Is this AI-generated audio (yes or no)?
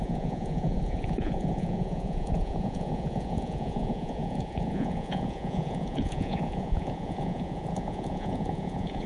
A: yes